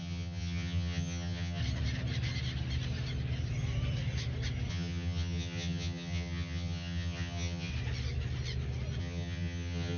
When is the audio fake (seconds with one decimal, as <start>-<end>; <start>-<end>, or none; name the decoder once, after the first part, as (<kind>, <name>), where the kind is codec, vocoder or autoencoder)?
0.0-1.6 (vocoder, HiFi-GAN); 4.7-7.7; 9.0-10.0